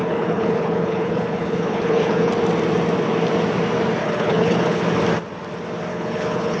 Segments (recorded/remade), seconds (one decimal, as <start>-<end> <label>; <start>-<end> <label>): 0.0-2.3 remade; 2.3-4.0 recorded; 4.0-4.8 remade; 4.8-5.9 recorded; 5.9-6.6 remade